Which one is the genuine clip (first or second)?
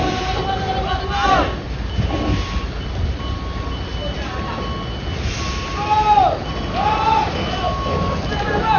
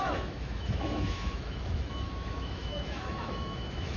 first